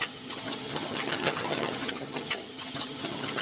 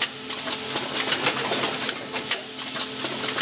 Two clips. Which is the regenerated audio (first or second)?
first